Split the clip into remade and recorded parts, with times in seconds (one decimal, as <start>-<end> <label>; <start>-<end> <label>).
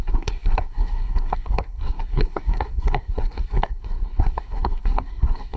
0.0-5.6 remade